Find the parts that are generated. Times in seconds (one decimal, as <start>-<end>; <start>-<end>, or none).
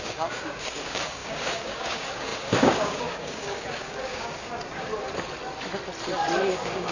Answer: 0.0-4.9; 6.5-6.9